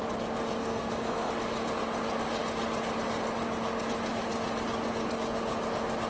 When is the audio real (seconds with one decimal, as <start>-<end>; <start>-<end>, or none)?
0.0-0.6; 1.3-6.1

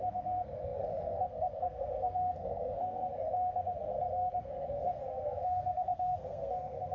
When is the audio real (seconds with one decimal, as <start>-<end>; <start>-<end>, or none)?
none

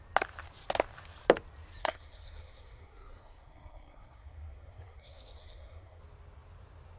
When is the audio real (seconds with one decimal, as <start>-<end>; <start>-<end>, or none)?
0.0-1.8; 6.0-7.0

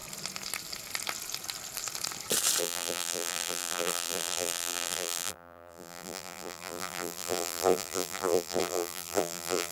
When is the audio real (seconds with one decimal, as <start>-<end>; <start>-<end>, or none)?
0.0-2.6

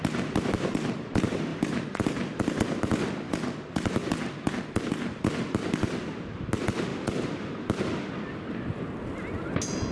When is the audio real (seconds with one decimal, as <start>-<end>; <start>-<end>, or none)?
0.0-1.5; 4.5-6.9; 8.1-9.9

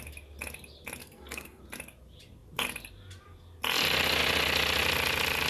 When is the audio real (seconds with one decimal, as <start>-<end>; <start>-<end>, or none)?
0.0-1.0; 1.6-5.5

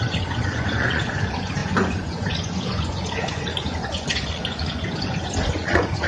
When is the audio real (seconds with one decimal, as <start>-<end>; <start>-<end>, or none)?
none